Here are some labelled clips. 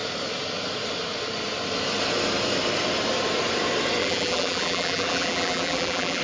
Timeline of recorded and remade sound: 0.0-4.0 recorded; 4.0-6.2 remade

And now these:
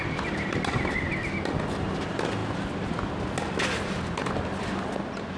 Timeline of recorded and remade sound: 0.0-5.4 recorded

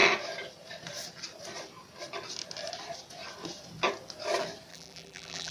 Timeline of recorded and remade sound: 0.0-4.7 recorded; 4.7-5.5 remade

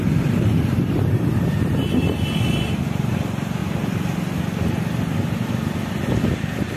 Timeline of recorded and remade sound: 0.0-3.6 remade; 3.6-5.5 recorded; 5.5-6.8 remade

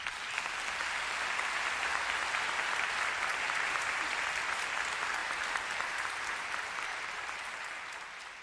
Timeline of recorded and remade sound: 0.0-1.9 remade; 1.9-2.7 recorded; 2.7-8.4 remade

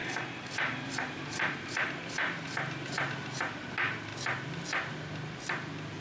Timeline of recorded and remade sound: 0.0-4.1 remade; 4.1-6.0 recorded

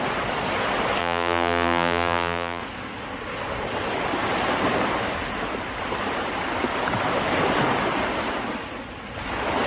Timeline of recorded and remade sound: 0.0-1.0 recorded; 1.0-2.6 remade; 2.6-9.7 recorded